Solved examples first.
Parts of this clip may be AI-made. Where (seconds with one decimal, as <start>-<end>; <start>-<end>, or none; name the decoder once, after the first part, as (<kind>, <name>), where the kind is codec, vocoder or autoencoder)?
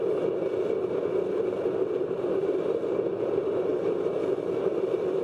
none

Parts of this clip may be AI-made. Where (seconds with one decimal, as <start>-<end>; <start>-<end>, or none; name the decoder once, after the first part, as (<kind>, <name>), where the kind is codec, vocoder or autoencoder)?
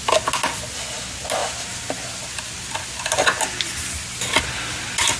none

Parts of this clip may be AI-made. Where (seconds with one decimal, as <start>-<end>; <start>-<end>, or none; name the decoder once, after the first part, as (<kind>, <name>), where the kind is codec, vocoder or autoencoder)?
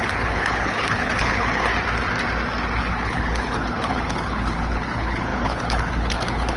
0.0-1.7 (codec, HILCodec); 2.8-6.6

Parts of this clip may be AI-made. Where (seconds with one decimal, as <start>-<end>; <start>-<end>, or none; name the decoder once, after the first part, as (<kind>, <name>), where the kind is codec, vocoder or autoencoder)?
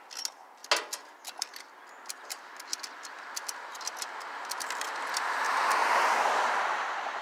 none